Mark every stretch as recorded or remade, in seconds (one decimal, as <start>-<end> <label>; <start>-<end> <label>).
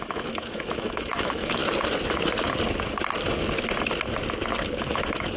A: 0.0-1.6 remade; 1.6-4.8 recorded; 4.8-5.4 remade